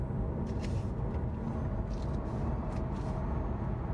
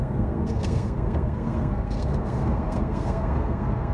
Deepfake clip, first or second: second